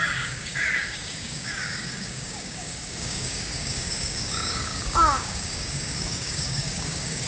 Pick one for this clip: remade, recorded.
remade